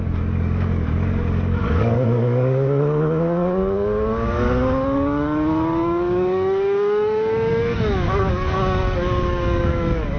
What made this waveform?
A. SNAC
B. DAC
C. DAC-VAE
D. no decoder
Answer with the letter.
B